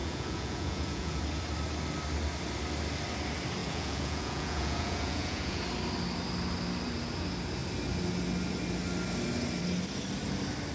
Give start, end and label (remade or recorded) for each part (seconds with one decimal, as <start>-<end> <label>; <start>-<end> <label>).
0.0-1.2 remade; 1.2-3.6 recorded; 3.6-5.6 remade; 5.6-10.7 recorded